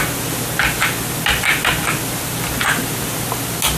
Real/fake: real